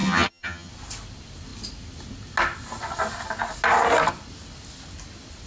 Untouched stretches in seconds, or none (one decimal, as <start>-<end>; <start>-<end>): 0.7-5.5